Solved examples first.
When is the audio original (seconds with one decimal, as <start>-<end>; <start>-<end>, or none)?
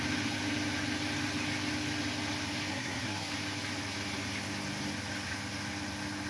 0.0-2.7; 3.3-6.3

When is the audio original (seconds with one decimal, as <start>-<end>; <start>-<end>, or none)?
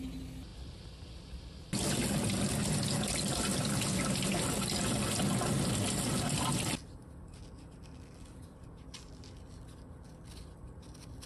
0.0-11.3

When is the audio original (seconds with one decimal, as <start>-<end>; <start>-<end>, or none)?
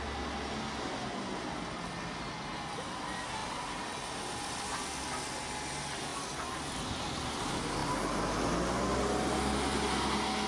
0.0-10.5